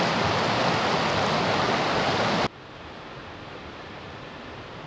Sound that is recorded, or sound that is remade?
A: recorded